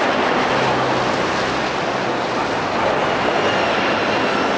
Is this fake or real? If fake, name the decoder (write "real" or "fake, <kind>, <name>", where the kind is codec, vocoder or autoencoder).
real